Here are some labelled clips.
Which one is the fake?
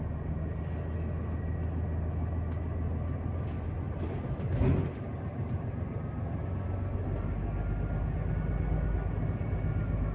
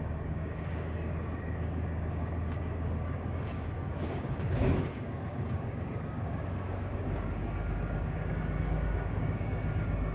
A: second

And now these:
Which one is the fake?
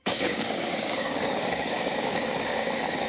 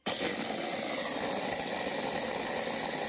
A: first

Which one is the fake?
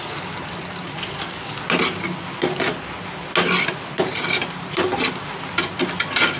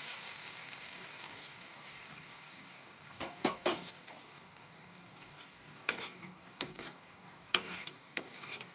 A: second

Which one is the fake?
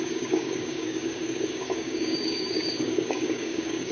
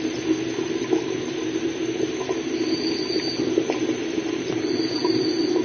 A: first